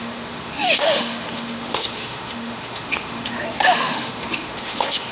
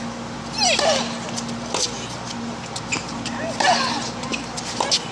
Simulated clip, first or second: first